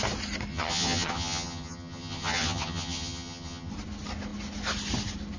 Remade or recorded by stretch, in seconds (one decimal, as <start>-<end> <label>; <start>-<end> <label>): 0.0-0.5 recorded; 0.5-3.7 remade; 3.7-5.4 recorded